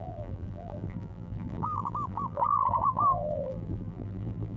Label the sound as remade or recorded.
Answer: remade